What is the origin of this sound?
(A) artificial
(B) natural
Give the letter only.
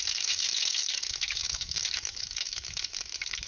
A